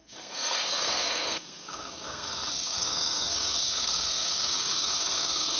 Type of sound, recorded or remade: remade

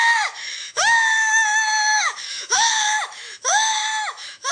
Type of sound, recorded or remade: remade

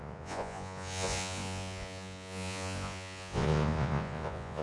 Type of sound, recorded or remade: remade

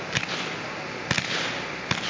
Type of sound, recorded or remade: recorded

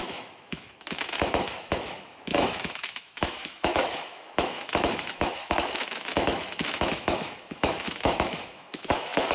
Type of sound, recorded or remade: remade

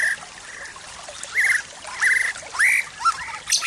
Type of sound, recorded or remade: recorded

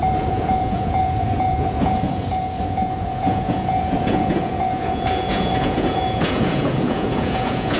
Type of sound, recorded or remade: remade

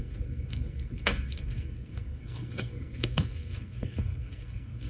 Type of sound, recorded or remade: remade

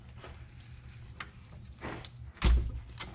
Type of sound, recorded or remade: recorded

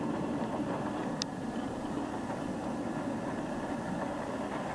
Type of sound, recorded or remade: recorded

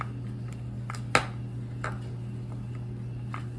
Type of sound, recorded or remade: recorded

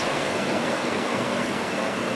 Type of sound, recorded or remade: remade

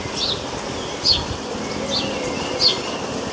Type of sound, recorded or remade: recorded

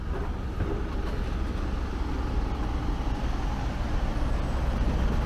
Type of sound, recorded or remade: recorded